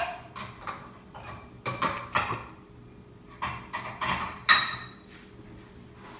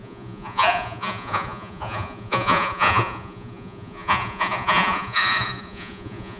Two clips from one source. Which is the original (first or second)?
first